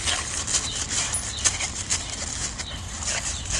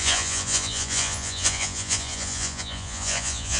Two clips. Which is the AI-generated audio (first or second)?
second